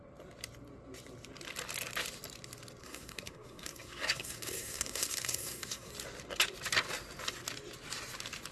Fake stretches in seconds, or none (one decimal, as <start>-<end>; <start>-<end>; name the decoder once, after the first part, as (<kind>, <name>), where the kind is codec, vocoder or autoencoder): 2.8-5.9 (codec, SNAC)